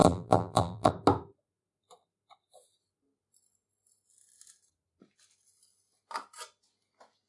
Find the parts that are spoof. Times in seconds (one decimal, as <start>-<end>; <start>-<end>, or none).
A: 0.0-0.9